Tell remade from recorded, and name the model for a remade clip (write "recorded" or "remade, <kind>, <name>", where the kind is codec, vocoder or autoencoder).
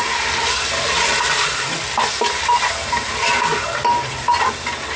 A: recorded